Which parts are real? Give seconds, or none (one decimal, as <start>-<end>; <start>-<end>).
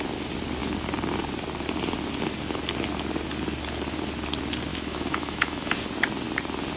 0.0-4.7; 5.7-6.8